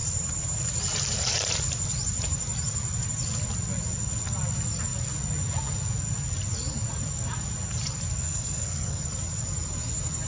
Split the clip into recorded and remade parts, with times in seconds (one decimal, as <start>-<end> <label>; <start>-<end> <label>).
0.0-8.2 recorded; 8.2-9.0 remade; 9.0-10.3 recorded